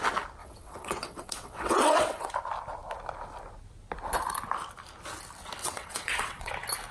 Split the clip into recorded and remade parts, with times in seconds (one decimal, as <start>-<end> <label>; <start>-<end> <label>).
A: 0.0-0.4 recorded; 0.4-2.3 remade; 2.3-5.6 recorded; 5.6-6.5 remade; 6.5-6.9 recorded